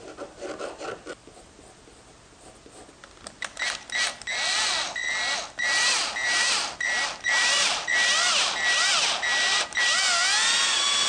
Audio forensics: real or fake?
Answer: real